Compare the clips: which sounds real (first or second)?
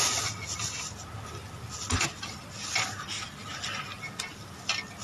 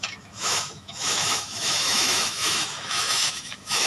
first